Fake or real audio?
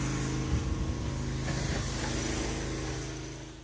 real